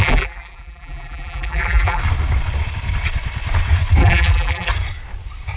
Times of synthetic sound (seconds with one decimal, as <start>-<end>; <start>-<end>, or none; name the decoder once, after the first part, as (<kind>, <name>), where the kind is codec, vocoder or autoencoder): 0.0-2.0 (vocoder, BigVGAN v2); 4.0-4.7